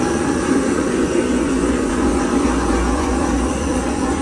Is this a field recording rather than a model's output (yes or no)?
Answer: no